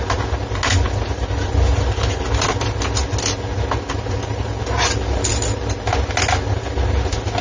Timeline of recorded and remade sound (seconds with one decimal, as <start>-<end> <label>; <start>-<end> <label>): 0.0-7.4 recorded